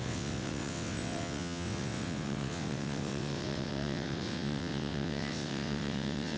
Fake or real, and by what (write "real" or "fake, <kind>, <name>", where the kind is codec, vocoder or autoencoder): fake, vocoder, WaveNeXt